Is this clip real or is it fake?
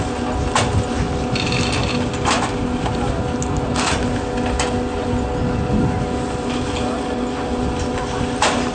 real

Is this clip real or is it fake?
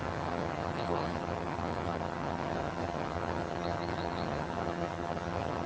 fake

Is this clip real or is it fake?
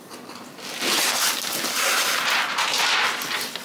real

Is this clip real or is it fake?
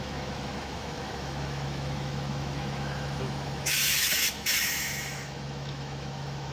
fake